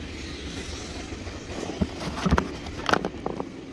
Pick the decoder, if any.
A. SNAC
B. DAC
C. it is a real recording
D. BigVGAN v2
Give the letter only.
C